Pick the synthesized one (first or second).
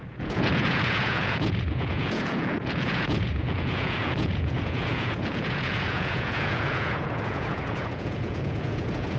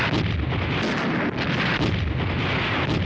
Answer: first